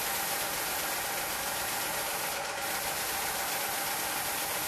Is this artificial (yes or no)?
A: no